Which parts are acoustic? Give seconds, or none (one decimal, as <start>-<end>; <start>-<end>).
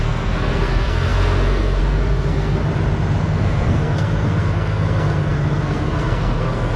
2.6-3.2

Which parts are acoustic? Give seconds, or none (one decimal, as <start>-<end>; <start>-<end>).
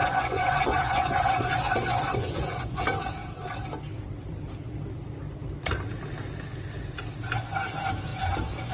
2.8-8.7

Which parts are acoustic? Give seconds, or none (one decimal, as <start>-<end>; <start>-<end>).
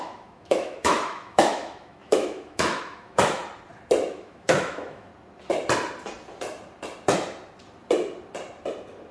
3.4-4.1; 5.1-9.1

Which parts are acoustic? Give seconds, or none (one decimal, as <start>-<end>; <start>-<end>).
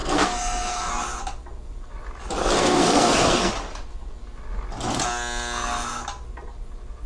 0.9-2.4; 3.5-7.1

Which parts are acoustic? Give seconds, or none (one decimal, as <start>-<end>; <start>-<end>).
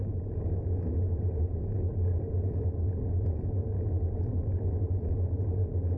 0.0-1.9; 2.9-4.3; 5.6-6.0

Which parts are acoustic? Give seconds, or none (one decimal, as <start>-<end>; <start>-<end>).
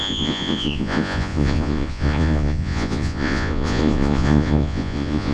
none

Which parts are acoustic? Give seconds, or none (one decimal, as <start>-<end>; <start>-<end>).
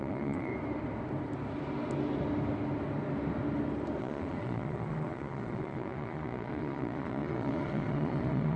0.5-4.0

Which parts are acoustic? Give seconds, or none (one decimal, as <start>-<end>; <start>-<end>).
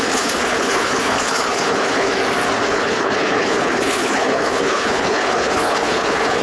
2.1-2.7